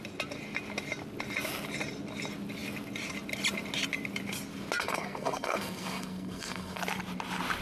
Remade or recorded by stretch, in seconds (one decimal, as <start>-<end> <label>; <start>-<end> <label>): 0.0-4.8 recorded; 4.8-6.8 remade; 6.8-7.6 recorded

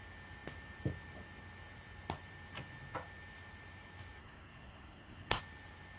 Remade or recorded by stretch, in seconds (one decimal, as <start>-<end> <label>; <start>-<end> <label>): 0.0-4.2 recorded; 4.2-5.4 remade; 5.4-6.0 recorded